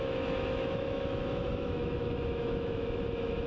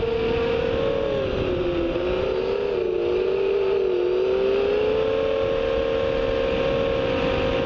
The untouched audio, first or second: second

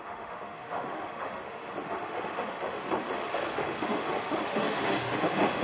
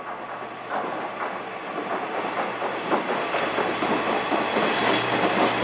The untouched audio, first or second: second